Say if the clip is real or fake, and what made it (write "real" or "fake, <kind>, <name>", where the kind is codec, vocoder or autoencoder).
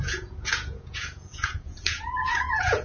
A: fake, vocoder, Vocos